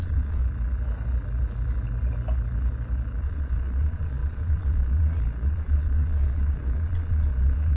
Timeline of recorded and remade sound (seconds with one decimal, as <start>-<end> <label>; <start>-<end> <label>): 0.0-0.4 remade; 0.4-3.2 recorded; 3.2-7.8 remade